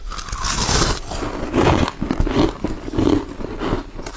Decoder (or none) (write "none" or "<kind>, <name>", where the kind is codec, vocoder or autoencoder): none